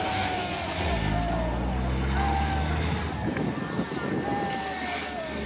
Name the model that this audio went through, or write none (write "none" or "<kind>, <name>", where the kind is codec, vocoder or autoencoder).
none